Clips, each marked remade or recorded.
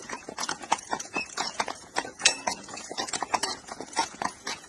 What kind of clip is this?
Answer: remade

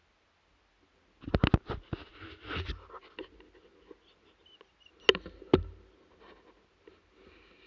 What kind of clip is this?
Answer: recorded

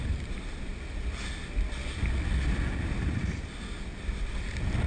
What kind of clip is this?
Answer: recorded